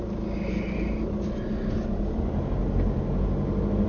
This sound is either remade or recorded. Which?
recorded